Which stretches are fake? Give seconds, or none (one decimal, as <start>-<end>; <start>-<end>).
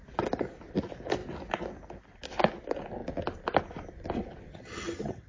4.5-5.3